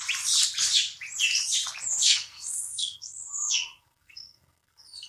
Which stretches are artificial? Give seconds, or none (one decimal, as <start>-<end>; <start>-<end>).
2.0-5.1